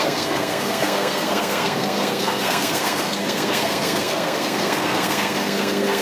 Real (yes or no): no